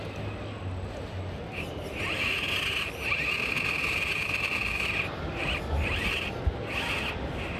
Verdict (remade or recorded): recorded